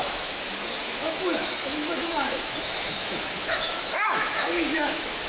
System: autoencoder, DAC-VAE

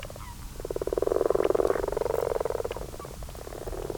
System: none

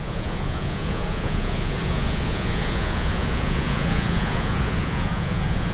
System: vocoder, Vocos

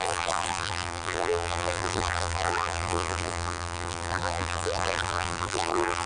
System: vocoder, BigVGAN v2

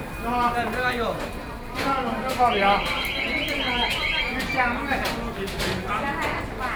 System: none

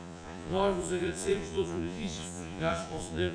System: vocoder, Vocos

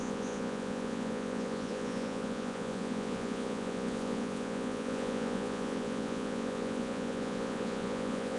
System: vocoder, Vocos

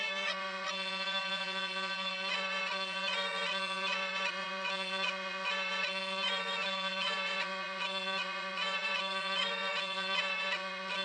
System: vocoder, Vocos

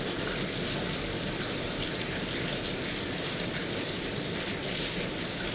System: none